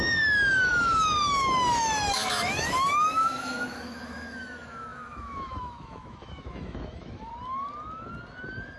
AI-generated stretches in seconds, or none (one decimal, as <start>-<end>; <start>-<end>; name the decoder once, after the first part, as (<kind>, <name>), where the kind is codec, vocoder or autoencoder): 0.0-7.3 (autoencoder, DAC-VAE)